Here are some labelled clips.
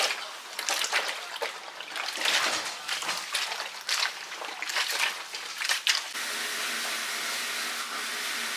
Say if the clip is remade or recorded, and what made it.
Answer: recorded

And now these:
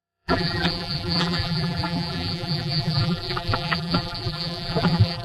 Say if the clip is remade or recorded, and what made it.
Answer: remade, vocoder, BigVGAN v2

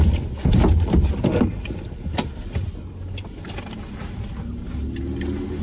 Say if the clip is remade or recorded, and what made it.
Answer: recorded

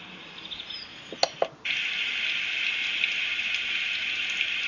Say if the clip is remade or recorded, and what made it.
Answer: recorded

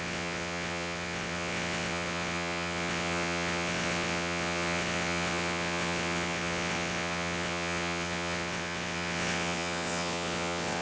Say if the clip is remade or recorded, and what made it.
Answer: remade, vocoder, WaveNeXt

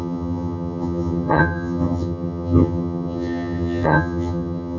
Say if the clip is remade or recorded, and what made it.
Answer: remade, vocoder, HiFi-GAN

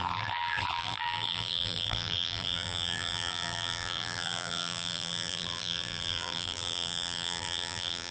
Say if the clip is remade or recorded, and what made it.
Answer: remade, vocoder, BigVGAN v2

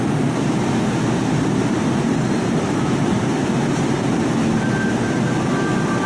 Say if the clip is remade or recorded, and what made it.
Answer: remade, vocoder, BigVGAN v2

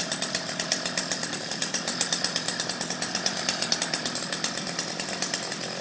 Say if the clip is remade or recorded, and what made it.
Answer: recorded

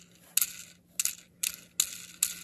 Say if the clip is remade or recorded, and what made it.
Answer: recorded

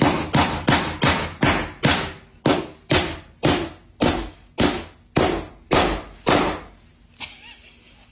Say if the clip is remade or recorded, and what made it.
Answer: recorded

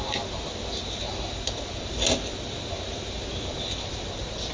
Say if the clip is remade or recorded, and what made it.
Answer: recorded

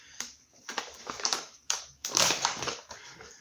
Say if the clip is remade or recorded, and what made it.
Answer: remade, codec, DAC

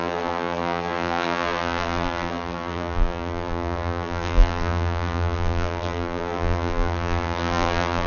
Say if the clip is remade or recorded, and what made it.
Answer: remade, vocoder, BigVGAN v2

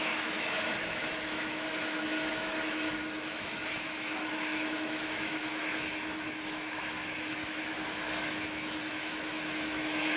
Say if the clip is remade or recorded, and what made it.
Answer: remade, autoencoder, DAC-VAE